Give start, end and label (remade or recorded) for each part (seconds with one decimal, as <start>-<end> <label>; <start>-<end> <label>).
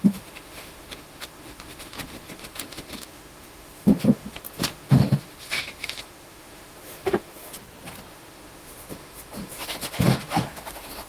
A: 0.0-7.5 remade; 7.5-8.1 recorded; 8.1-11.1 remade